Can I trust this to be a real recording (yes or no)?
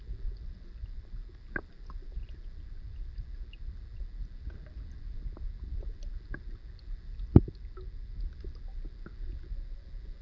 yes